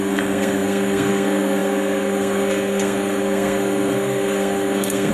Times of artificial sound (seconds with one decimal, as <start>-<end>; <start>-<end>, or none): 0.0-5.1